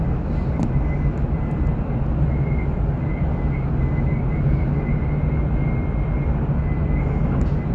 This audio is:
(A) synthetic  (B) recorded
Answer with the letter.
B